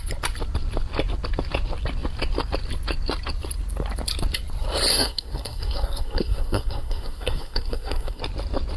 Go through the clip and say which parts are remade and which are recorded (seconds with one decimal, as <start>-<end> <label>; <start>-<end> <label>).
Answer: 0.0-4.9 recorded; 4.9-8.2 remade; 8.2-8.8 recorded